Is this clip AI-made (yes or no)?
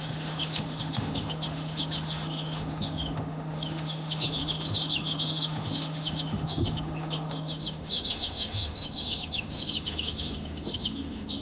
yes